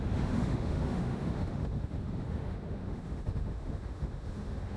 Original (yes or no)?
no